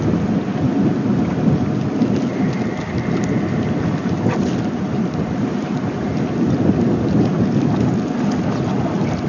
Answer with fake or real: real